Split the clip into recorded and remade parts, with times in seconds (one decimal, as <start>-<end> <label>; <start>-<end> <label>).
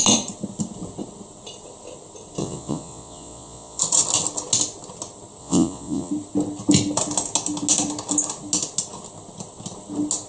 0.0-2.4 recorded; 2.4-3.8 remade; 3.8-5.4 recorded; 5.4-6.1 remade; 6.1-10.3 recorded